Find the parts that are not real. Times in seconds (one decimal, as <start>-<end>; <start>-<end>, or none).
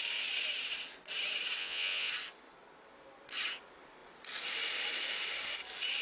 1.6-2.1